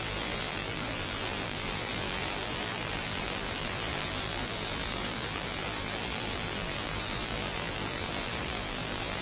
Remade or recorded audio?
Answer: remade